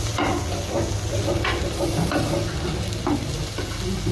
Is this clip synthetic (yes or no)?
no